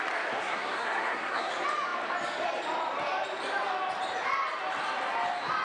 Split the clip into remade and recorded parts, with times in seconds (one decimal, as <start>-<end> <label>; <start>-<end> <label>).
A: 0.0-0.4 recorded; 0.4-1.5 remade; 1.5-5.6 recorded